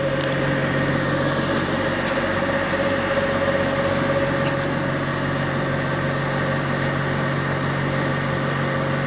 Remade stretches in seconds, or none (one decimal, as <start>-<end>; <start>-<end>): none